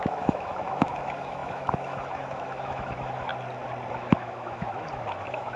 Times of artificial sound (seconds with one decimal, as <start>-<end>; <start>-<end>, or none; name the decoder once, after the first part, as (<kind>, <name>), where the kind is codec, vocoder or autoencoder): 0.0-3.3 (autoencoder, DAC-VAE); 3.9-5.6